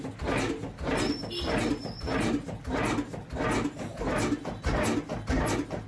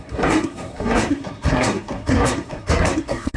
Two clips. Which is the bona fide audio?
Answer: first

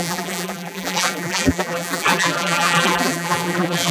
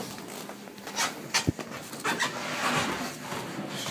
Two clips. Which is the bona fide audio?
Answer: second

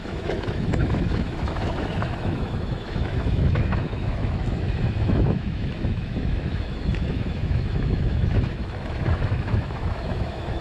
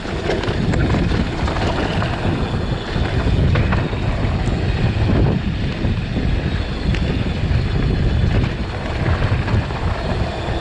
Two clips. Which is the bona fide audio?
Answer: second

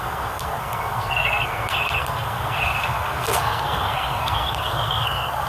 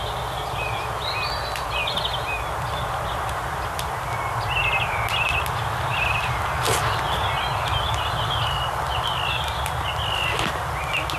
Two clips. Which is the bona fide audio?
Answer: second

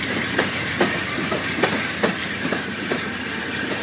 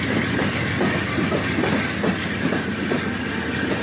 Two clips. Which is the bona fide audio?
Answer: second